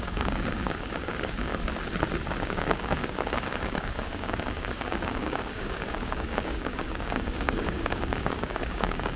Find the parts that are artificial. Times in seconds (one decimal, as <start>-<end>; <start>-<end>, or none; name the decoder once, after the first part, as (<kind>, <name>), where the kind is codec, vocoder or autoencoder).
0.0-1.5 (codec, DAC); 2.4-9.2

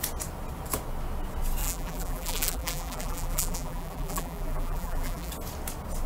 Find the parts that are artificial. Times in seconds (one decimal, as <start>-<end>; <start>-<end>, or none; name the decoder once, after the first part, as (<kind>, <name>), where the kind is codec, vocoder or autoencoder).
1.6-5.3 (vocoder, BigVGAN v2)